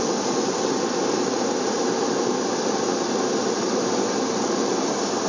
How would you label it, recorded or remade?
recorded